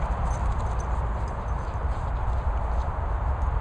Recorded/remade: recorded